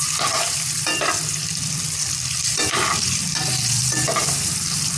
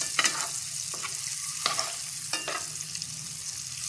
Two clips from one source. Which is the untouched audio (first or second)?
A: second